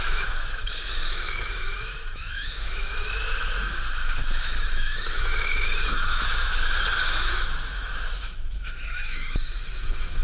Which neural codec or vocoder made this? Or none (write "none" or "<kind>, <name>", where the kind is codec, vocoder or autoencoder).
autoencoder, DAC-VAE